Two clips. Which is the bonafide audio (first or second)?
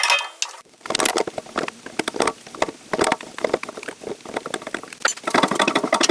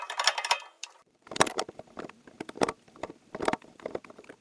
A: first